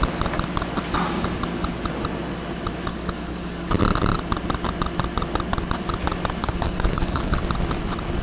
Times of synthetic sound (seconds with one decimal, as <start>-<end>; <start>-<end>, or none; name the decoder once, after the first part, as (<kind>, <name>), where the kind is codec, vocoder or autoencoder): 2.9-3.8 (codec, DAC); 6.4-7.4